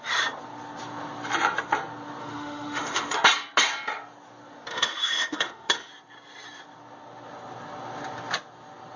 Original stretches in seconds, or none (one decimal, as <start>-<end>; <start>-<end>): 0.0-2.2; 3.1-4.7; 5.9-9.0